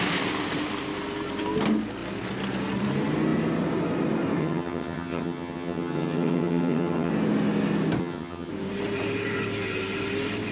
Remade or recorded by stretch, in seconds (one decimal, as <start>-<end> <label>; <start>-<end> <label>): 0.0-4.4 recorded; 4.4-7.1 remade; 7.1-8.0 recorded; 8.0-8.5 remade; 8.5-10.5 recorded